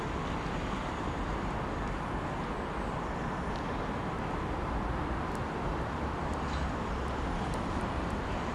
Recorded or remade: recorded